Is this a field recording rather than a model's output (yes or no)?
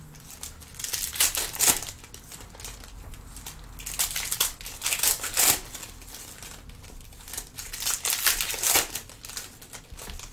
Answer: yes